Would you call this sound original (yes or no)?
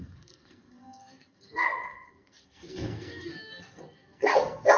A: no